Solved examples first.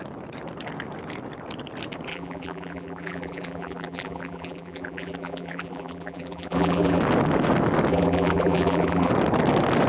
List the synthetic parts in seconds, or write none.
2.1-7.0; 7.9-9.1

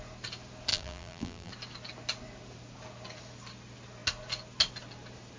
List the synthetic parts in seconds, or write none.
0.7-1.5

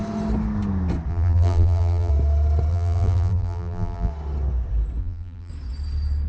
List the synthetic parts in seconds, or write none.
1.1-2.1; 2.7-4.1; 5.0-5.5

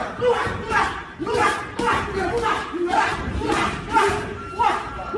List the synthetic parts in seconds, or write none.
0.0-1.0; 2.5-5.2

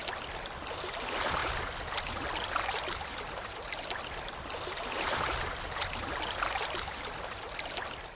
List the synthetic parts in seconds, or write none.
0.6-1.4; 2.0-8.1

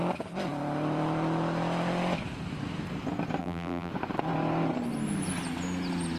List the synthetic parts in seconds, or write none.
3.4-3.9

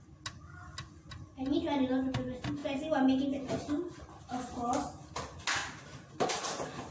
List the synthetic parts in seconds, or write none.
5.6-6.1